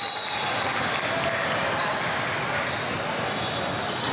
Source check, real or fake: real